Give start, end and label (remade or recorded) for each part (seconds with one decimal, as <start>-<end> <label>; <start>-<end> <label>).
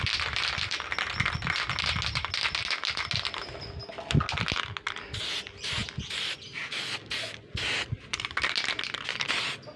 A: 0.0-9.8 recorded